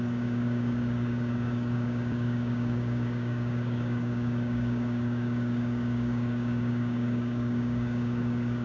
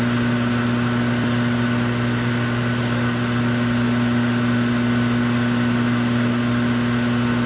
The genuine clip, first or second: second